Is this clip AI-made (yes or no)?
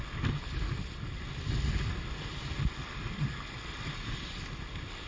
no